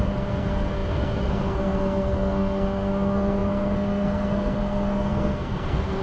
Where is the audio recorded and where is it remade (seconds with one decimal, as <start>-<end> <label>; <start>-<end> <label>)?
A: 0.0-6.0 remade